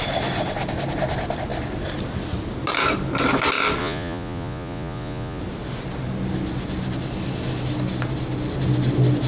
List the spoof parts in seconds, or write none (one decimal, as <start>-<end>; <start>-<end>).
3.8-5.4